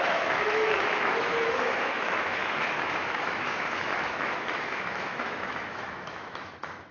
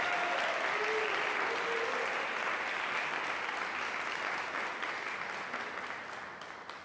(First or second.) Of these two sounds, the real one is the second